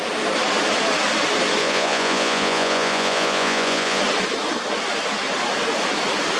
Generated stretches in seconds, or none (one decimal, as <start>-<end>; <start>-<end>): 1.6-4.0